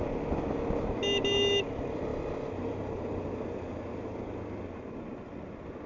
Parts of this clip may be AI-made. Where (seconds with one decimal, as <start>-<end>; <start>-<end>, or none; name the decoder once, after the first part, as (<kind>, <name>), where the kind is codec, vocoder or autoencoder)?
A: none